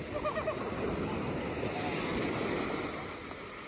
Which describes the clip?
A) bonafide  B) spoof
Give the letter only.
A